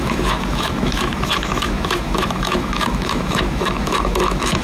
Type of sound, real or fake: fake